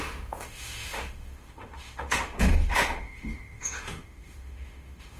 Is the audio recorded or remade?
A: remade